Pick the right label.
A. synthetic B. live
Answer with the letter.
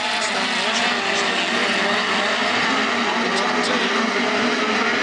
B